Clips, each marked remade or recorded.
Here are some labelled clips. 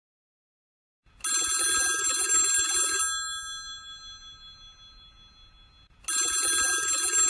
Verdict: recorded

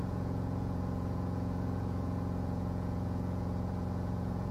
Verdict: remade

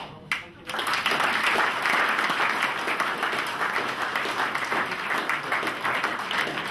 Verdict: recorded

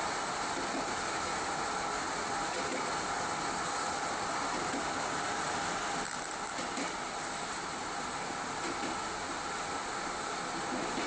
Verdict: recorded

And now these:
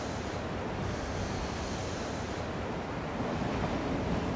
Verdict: recorded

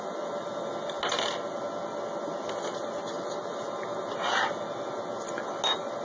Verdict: recorded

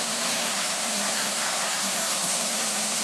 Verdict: remade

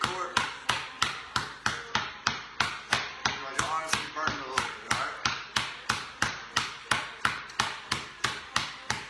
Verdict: recorded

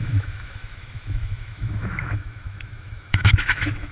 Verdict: remade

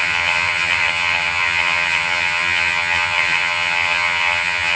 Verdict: remade